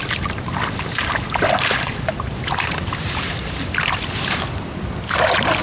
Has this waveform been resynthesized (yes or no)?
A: yes